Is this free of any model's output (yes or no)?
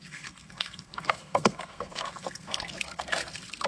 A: no